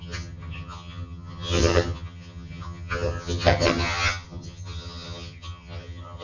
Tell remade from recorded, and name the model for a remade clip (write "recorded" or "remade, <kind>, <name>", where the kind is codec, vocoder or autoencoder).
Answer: remade, vocoder, HiFi-GAN